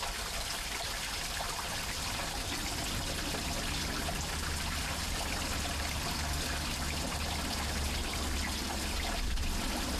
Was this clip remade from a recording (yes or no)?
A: no